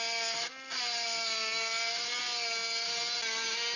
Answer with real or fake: real